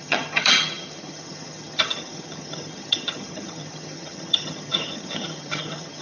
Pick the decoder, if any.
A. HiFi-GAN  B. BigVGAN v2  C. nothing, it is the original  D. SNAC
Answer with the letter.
A